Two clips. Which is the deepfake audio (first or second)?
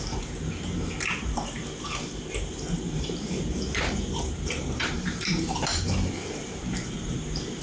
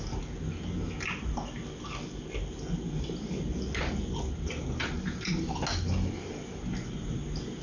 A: first